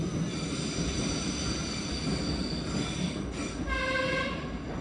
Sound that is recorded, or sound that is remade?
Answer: recorded